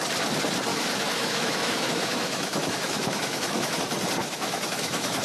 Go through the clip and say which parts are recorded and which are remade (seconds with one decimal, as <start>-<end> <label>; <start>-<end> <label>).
0.0-0.7 recorded; 0.7-3.8 remade; 3.8-4.2 recorded; 4.2-5.2 remade